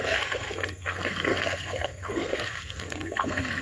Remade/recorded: remade